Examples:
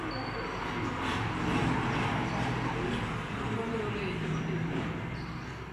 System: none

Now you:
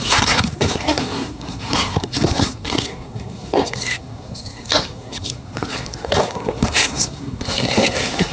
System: codec, SNAC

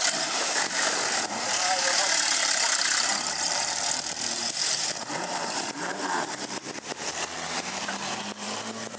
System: vocoder, BigVGAN v2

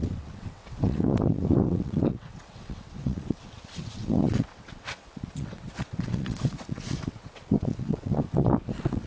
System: vocoder, WaveNeXt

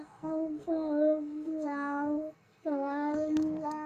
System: codec, SNAC